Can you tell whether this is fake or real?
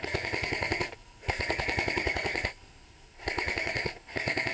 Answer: fake